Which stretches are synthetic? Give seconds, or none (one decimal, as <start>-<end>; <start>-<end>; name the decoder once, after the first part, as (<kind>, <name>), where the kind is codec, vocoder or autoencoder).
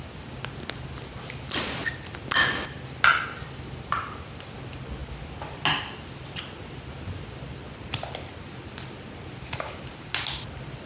none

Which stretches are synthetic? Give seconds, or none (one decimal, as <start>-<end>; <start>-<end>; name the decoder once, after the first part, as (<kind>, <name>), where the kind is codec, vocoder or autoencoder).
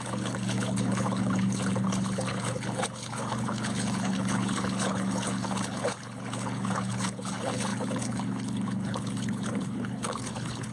0.0-10.7 (codec, HILCodec)